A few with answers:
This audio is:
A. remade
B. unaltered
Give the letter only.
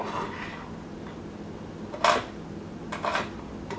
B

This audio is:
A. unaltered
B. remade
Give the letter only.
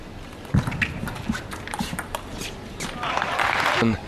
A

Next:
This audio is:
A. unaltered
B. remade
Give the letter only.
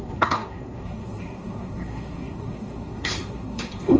B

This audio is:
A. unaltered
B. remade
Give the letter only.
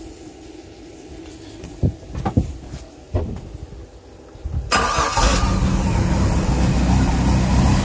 A